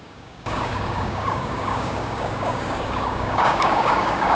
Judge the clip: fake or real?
fake